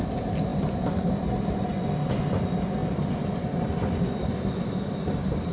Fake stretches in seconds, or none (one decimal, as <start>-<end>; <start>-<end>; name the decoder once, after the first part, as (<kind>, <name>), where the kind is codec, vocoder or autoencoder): none